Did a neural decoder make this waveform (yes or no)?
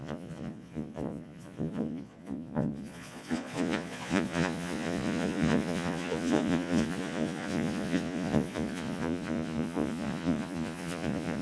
yes